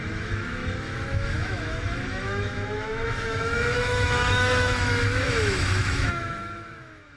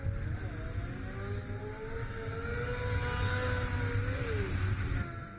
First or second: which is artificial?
first